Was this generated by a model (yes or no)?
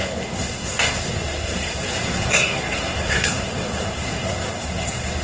yes